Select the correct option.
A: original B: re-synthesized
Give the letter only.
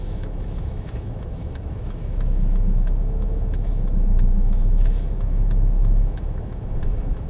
B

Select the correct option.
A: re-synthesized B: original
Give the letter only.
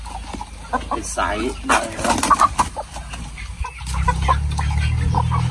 B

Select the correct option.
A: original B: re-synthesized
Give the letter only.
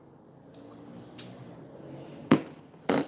A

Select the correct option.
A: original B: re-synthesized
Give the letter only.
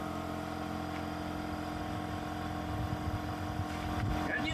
A